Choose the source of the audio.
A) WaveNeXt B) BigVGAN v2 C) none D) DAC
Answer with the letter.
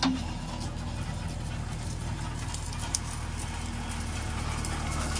C